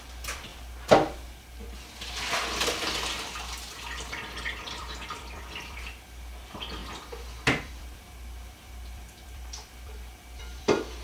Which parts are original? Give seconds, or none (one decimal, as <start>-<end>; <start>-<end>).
0.5-4.6; 6.8-7.6